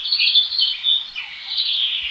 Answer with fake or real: real